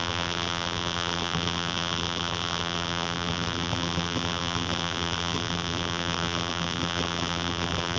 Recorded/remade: remade